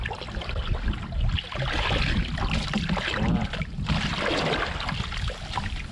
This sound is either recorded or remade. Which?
recorded